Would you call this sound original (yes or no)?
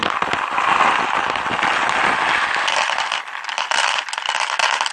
yes